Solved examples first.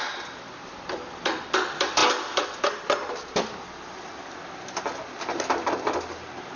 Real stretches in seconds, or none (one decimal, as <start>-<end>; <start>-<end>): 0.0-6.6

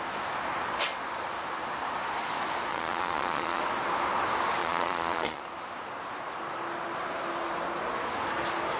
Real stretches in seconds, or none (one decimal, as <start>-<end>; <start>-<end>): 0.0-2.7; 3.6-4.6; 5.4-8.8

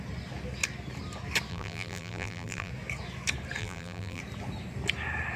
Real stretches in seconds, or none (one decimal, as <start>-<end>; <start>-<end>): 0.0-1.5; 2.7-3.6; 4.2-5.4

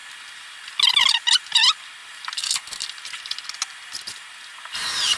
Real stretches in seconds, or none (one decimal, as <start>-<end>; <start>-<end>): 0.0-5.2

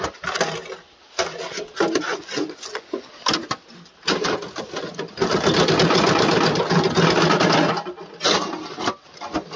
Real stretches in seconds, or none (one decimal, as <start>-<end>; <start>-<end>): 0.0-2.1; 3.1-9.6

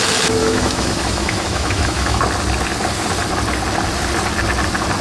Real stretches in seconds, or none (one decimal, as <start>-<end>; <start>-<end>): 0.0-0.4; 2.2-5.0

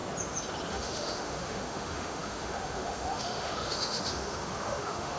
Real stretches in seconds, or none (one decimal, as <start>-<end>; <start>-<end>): 0.0-0.7

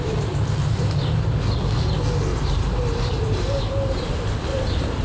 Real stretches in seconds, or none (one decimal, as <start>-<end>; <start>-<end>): 0.0-2.3; 3.6-4.5